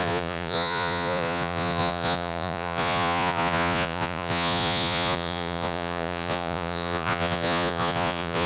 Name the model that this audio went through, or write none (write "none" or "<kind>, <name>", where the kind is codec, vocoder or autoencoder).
vocoder, Vocos